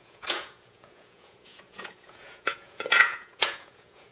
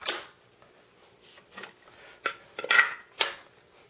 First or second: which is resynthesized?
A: first